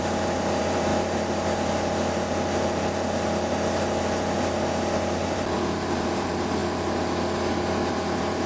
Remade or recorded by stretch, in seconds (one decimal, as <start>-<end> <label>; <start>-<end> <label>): 0.0-0.9 remade; 0.9-5.2 recorded; 5.2-6.6 remade; 6.6-7.9 recorded; 7.9-8.5 remade

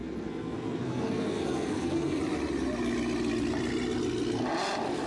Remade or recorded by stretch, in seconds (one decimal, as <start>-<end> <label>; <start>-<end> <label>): 0.0-2.2 remade; 2.2-5.1 recorded